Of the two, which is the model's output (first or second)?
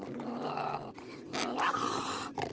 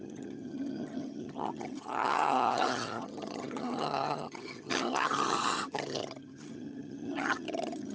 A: second